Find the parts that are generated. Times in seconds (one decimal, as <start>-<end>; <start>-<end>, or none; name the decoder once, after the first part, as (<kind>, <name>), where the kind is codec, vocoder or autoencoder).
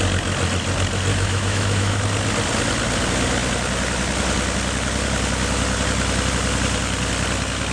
1.1-2.0 (autoencoder, DAC-VAE)